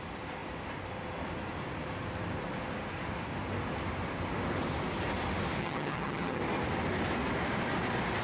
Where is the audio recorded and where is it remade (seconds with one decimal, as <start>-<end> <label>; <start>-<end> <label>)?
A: 0.0-5.6 recorded; 5.6-6.4 remade; 6.4-8.2 recorded